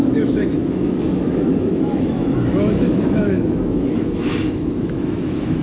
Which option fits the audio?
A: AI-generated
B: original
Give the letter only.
A